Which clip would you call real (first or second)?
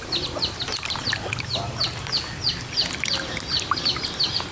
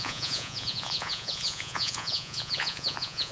first